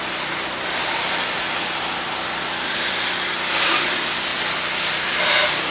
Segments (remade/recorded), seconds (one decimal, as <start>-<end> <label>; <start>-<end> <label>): 0.0-5.7 recorded